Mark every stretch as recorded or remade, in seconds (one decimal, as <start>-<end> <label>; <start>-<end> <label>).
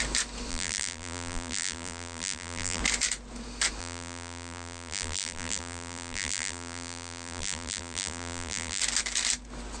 0.0-0.5 recorded; 0.5-2.8 remade; 2.8-3.8 recorded; 3.8-8.8 remade; 8.8-9.8 recorded